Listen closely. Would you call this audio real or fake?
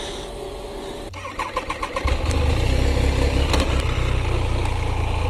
real